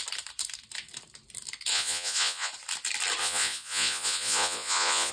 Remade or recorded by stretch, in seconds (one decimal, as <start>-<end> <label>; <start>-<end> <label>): 0.0-1.7 recorded; 1.7-2.5 remade; 2.5-3.2 recorded; 3.2-5.1 remade